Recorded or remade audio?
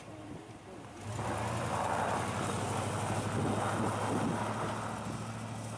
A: recorded